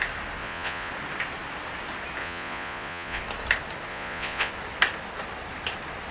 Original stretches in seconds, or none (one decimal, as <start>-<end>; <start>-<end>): 0.0-0.4; 0.9-2.2; 3.2-3.9; 4.5-6.1